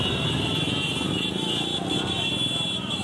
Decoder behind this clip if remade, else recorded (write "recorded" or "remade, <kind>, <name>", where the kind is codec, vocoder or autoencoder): recorded